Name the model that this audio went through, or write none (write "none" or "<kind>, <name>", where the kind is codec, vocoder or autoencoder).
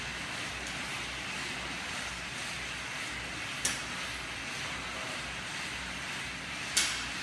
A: none